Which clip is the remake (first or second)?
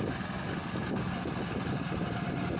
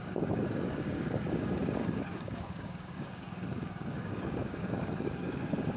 second